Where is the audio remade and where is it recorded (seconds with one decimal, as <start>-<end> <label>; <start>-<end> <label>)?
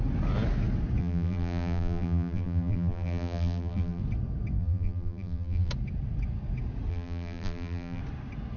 0.0-1.0 recorded; 1.0-4.0 remade; 4.0-4.6 recorded; 4.6-5.7 remade; 5.7-6.9 recorded; 6.9-8.0 remade; 8.0-8.6 recorded